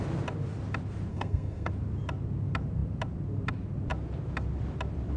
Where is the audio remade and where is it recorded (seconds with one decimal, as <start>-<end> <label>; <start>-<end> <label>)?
0.0-1.1 recorded; 1.1-1.7 remade; 1.7-5.2 recorded